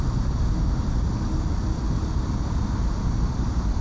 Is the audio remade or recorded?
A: recorded